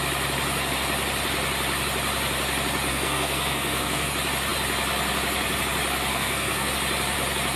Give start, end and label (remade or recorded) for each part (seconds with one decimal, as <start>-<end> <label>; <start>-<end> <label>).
0.0-2.9 recorded; 2.9-4.1 remade; 4.1-6.1 recorded; 6.1-6.7 remade; 6.7-7.6 recorded